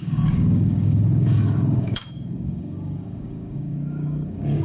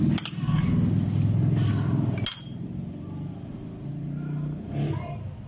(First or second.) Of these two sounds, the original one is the second